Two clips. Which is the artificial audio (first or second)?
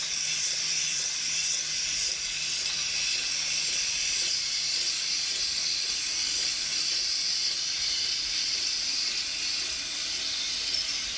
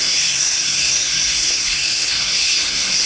second